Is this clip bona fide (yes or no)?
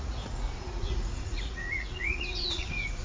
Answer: no